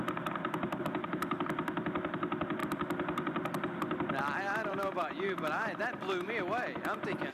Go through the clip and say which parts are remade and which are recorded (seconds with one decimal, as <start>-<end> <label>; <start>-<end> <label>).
0.0-2.6 recorded; 2.6-7.3 remade